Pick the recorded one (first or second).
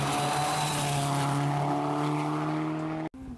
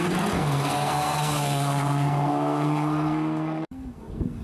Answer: first